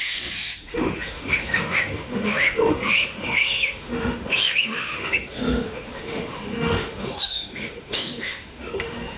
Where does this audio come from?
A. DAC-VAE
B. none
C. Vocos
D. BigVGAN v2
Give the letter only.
A